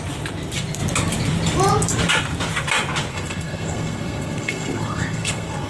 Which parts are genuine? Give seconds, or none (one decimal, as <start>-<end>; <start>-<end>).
0.0-3.1